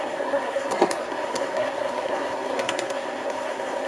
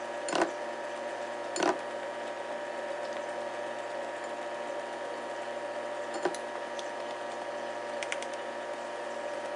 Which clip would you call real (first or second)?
second